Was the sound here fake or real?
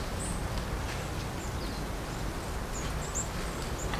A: real